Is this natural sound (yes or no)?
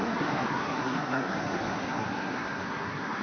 no